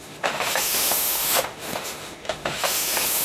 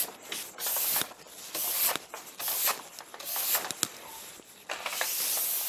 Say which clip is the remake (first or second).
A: first